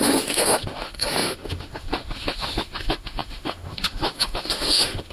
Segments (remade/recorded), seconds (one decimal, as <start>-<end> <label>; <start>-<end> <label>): 0.0-5.1 remade